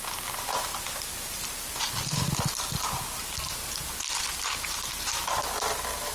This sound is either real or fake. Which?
real